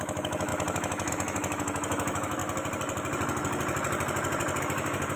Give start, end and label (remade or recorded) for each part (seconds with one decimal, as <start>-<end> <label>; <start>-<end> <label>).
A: 0.0-2.4 remade; 2.4-4.6 recorded; 4.6-5.2 remade